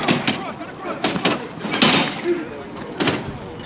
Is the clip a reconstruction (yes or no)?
no